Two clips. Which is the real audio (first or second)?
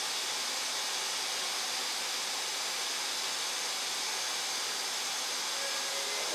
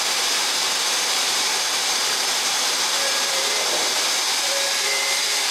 first